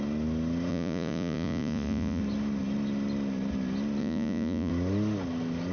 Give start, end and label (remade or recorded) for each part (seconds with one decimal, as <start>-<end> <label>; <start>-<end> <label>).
0.0-0.7 recorded; 0.7-2.2 remade; 2.2-4.0 recorded; 4.0-4.7 remade; 4.7-5.7 recorded